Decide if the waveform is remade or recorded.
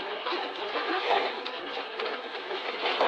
remade